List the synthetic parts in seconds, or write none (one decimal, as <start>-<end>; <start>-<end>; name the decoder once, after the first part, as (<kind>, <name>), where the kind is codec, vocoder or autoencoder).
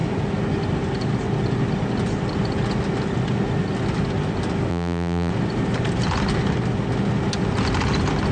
4.7-5.3 (vocoder, BigVGAN v2)